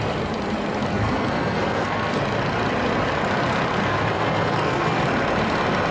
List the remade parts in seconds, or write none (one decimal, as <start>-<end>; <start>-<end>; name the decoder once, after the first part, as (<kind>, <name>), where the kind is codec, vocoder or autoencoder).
0.9-2.2 (codec, SNAC); 3.8-5.0